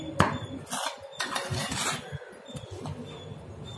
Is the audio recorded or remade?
recorded